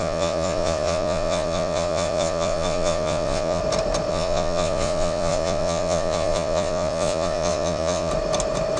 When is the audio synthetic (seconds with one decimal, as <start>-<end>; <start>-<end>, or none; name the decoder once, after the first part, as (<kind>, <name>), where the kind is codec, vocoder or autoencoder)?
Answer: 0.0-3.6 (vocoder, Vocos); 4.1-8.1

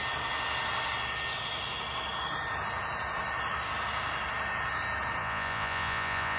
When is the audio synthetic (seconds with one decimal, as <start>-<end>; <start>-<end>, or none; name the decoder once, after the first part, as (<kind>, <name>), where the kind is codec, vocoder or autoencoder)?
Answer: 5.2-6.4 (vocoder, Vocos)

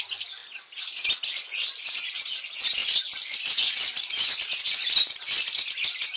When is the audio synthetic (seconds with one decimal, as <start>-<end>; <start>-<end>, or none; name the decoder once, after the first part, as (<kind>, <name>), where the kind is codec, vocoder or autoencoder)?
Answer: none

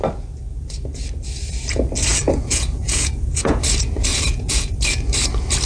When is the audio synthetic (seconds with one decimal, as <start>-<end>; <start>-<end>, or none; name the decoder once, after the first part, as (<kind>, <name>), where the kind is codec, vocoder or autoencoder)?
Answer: 2.1-3.6 (vocoder, Vocos); 4.1-4.7